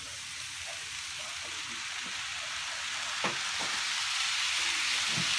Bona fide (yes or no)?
yes